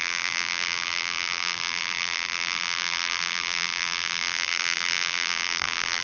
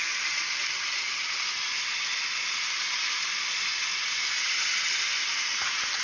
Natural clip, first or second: second